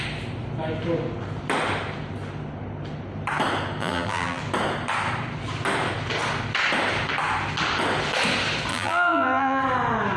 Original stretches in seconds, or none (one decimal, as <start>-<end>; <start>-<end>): 0.0-3.8; 4.4-8.7; 9.6-10.2